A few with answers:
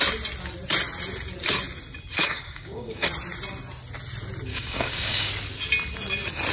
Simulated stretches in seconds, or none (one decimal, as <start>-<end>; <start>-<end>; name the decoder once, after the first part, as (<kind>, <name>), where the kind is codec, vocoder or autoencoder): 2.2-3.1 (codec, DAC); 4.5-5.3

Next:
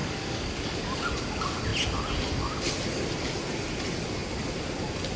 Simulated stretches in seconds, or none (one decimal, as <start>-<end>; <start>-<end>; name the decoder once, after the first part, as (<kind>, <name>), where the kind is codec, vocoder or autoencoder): 0.0-1.1 (codec, DAC)

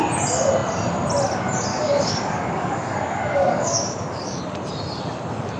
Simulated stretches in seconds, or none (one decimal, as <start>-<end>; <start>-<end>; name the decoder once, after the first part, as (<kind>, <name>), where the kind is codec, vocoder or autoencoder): 1.7-4.4 (codec, DAC)

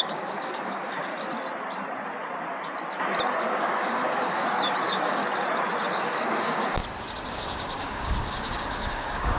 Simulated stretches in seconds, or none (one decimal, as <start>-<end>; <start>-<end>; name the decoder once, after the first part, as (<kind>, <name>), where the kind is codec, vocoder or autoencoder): 0.0-1.1 (codec, DAC); 3.4-5.2; 5.9-6.8; 7.3-9.4

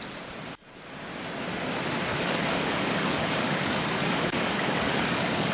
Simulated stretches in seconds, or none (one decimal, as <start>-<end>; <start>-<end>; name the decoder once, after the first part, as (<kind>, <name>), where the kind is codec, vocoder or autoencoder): 2.1-5.5 (codec, DAC)